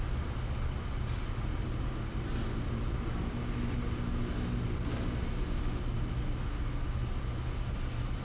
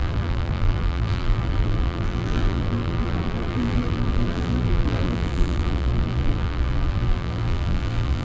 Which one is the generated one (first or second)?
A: second